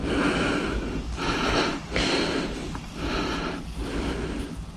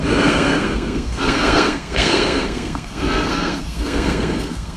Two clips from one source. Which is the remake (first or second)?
second